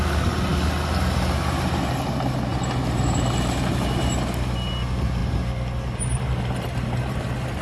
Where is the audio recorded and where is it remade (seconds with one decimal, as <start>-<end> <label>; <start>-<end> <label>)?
0.0-7.6 recorded